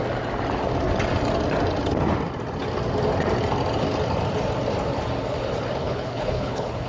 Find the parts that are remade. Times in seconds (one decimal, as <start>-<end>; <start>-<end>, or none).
5.8-6.9